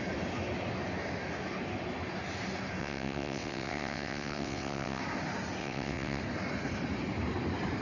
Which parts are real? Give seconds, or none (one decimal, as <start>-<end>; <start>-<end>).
0.0-2.8; 5.0-5.6; 6.2-7.8